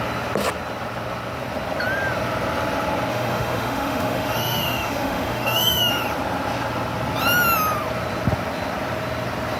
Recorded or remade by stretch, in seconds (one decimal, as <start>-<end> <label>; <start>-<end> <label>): 0.0-3.1 recorded; 3.1-5.9 remade; 5.9-9.6 recorded